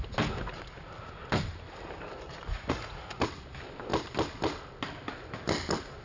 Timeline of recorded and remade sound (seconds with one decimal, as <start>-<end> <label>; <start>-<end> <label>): 0.0-2.5 recorded; 2.5-3.2 remade; 3.2-6.0 recorded